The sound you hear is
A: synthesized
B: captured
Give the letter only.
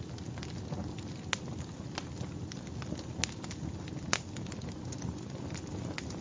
B